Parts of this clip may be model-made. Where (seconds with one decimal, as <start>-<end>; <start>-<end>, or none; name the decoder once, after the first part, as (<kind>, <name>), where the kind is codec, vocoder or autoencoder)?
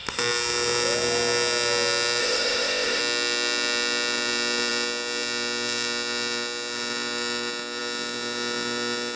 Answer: 2.2-3.0 (codec, ZipCodec)